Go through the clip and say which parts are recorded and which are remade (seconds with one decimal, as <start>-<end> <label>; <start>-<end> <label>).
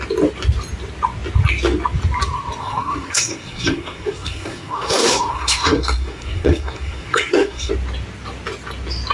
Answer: 0.0-2.6 recorded; 2.6-7.7 remade; 7.7-9.1 recorded